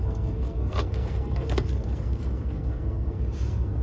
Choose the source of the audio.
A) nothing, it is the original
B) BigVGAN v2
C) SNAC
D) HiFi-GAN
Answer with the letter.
C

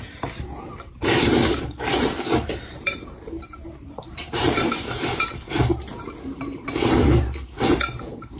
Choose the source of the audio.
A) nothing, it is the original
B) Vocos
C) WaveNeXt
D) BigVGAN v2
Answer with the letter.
D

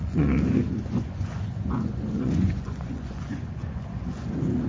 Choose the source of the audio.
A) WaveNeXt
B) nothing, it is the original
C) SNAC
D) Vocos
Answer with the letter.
D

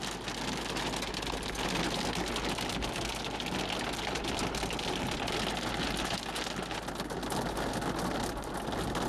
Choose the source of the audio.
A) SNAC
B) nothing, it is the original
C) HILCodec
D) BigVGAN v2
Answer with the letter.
B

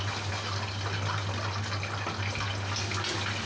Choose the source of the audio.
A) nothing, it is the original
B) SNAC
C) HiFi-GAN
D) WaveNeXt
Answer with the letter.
A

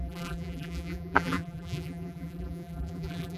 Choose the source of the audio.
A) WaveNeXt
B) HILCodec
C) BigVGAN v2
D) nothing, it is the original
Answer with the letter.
C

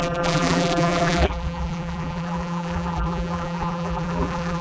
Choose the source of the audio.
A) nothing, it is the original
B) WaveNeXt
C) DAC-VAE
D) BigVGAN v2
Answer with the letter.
D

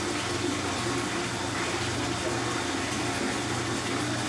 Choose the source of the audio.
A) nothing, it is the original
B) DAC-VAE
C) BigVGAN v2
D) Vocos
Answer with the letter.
A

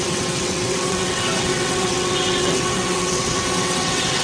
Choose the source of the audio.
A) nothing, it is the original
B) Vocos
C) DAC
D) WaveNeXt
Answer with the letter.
D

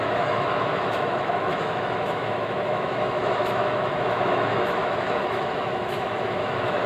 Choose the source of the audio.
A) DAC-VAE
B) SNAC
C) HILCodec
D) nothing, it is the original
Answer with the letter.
A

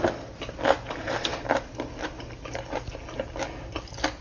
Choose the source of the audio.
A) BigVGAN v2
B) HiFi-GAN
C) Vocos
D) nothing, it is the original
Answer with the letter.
D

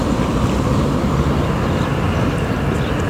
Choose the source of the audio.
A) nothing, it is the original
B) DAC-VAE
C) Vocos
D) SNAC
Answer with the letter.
A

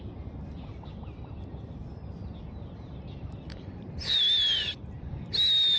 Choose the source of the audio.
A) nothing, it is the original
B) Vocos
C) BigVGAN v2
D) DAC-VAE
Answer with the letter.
A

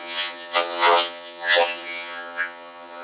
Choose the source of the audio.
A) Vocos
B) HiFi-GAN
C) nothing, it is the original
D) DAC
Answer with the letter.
B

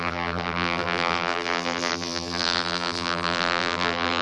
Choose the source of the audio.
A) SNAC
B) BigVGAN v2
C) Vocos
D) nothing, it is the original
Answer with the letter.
B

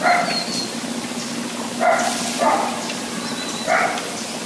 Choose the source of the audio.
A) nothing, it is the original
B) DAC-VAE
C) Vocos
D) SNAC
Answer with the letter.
A